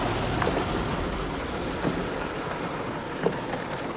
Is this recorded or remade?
recorded